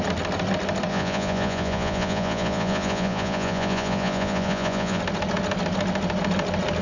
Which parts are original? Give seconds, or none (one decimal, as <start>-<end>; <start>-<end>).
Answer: 0.0-0.9; 5.0-6.8